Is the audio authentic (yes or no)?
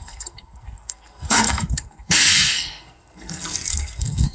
no